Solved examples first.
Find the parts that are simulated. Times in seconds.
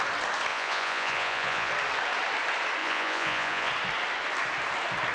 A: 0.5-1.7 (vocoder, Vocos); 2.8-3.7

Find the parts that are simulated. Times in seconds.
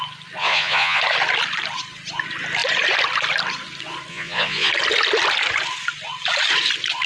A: 0.4-1.0 (vocoder, Vocos); 4.1-4.7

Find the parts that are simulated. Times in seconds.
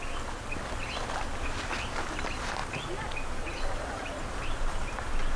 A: none